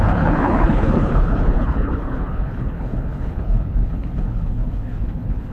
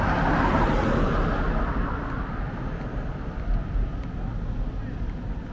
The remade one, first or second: first